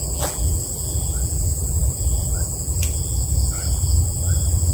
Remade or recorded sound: remade